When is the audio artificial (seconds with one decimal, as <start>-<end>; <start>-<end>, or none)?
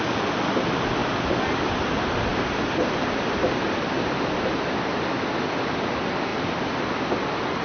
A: 2.3-4.9; 6.3-7.1